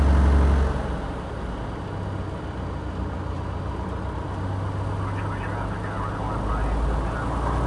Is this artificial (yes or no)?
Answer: no